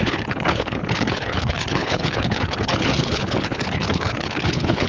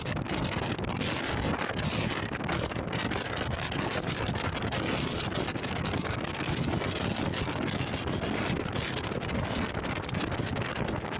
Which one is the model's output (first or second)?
first